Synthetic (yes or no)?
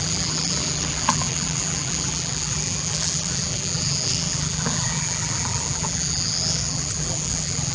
yes